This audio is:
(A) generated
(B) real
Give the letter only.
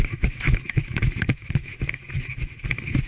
A